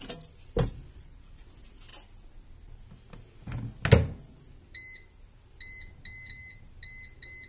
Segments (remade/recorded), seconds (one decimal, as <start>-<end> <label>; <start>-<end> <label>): 0.0-7.5 recorded